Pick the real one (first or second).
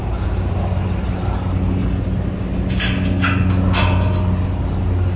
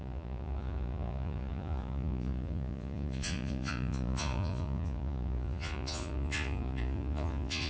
first